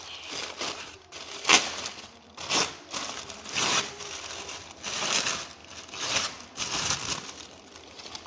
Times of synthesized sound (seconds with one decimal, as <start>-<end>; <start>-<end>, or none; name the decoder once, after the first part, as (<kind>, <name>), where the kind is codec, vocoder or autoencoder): none